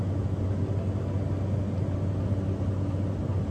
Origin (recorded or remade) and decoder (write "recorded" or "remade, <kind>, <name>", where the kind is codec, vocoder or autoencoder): recorded